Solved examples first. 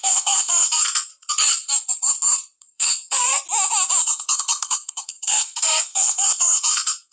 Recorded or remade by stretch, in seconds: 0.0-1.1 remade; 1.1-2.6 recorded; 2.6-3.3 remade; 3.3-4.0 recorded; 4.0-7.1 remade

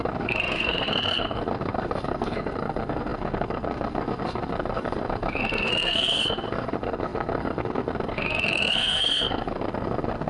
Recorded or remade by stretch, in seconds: 0.0-10.3 remade

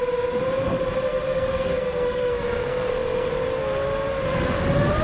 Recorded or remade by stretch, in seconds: 0.0-1.1 recorded; 1.1-3.3 remade; 3.3-5.0 recorded

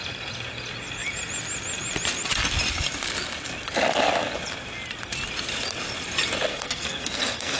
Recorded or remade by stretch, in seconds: 0.0-6.5 recorded; 6.5-7.6 remade

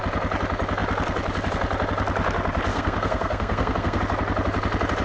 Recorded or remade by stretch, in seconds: 0.0-2.7 recorded; 2.7-4.0 remade; 4.0-5.0 recorded

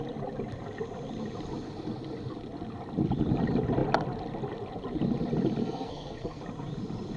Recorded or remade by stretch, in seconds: 0.0-5.6 recorded; 5.6-6.4 remade; 6.4-7.2 recorded

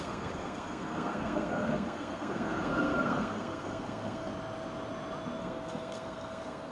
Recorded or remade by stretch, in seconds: 0.0-4.3 remade; 4.3-5.4 recorded; 5.4-6.7 remade

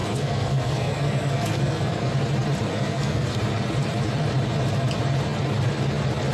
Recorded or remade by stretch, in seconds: 0.0-2.1 remade; 2.1-2.7 recorded; 2.7-3.4 remade; 3.4-6.3 recorded